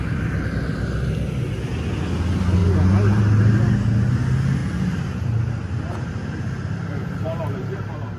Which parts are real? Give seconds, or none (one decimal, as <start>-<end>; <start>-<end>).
0.0-2.6; 3.2-4.6